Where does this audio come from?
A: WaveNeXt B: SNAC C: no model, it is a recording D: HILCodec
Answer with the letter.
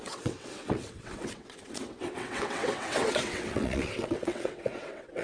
A